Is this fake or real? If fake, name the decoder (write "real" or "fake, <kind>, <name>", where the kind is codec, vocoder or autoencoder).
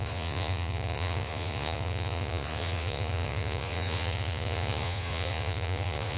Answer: fake, vocoder, Vocos